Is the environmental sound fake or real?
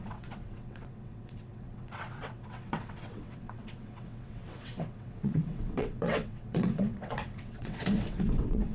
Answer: fake